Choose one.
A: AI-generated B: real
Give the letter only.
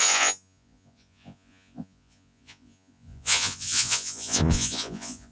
A